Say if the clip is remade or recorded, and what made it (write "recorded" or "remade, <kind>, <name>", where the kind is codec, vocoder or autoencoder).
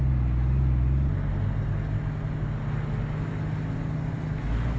recorded